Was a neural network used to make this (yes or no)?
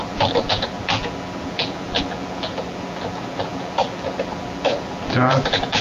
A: yes